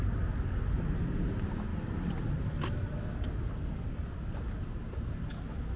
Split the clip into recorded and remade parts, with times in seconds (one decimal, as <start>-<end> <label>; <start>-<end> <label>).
0.0-5.8 recorded